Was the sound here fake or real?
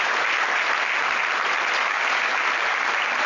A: real